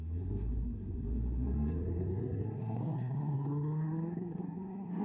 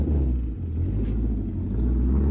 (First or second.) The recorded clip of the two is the second